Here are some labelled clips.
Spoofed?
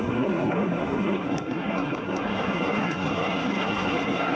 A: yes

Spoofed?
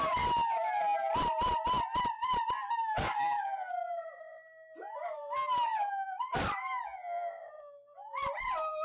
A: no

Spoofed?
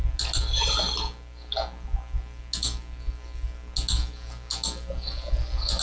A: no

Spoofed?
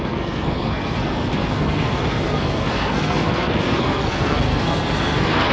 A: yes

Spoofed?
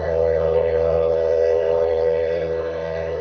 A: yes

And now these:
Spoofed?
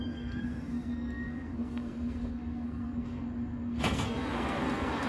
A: yes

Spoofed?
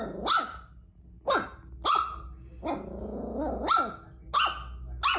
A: no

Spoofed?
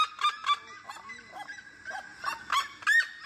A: no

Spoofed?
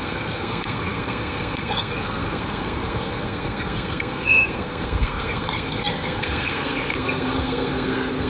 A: yes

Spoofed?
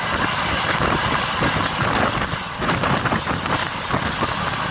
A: no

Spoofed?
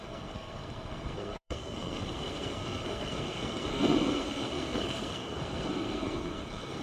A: yes